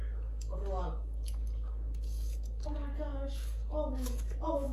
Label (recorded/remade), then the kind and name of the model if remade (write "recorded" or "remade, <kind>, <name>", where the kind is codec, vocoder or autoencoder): remade, codec, DAC